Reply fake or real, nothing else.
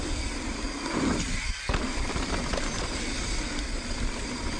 real